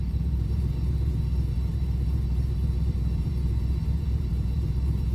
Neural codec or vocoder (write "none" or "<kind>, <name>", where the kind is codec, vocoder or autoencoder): vocoder, BigVGAN v2